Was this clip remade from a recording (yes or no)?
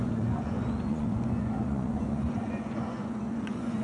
yes